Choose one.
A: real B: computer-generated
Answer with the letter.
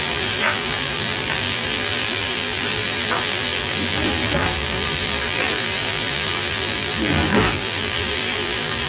B